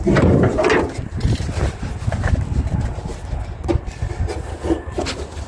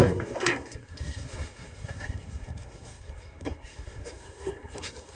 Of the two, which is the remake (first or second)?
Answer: second